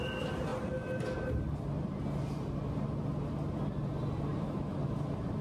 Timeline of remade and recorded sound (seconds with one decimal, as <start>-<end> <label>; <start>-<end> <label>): 0.0-5.4 recorded